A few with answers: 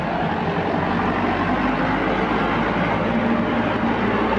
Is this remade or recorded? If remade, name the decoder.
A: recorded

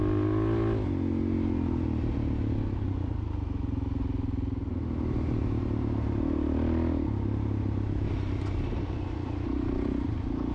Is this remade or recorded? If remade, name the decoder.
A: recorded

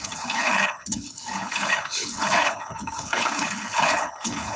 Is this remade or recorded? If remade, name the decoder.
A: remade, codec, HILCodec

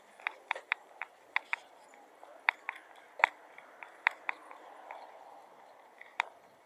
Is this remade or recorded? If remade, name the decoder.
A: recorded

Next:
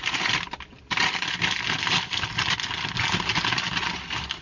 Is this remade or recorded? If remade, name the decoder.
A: recorded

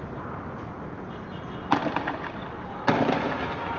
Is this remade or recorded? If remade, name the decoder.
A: recorded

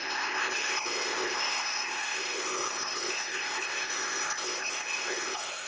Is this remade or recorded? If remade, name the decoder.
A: remade, codec, ZipCodec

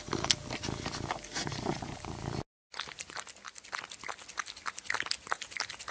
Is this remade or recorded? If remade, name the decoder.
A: recorded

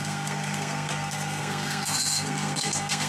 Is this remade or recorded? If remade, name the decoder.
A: remade, codec, SNAC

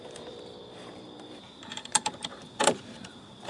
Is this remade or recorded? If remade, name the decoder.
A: remade, vocoder, BigVGAN v2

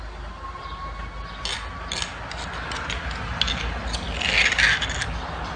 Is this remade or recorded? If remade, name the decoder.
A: recorded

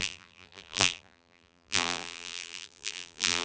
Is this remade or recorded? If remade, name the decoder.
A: remade, vocoder, BigVGAN v2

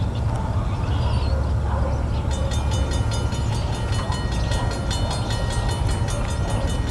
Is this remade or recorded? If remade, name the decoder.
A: recorded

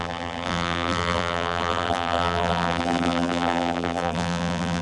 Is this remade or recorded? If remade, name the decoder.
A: remade, vocoder, BigVGAN v2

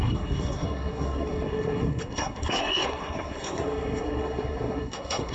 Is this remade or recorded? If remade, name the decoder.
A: remade, codec, SNAC